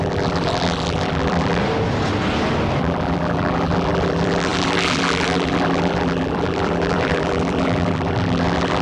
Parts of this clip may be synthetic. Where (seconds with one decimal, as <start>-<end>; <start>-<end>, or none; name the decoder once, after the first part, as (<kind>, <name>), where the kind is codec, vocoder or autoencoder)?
0.0-1.6 (vocoder, BigVGAN v2); 2.8-8.8